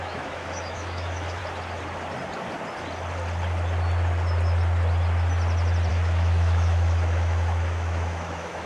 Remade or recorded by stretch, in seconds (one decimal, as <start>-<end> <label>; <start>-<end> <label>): 0.0-1.4 remade; 1.4-5.9 recorded; 5.9-8.7 remade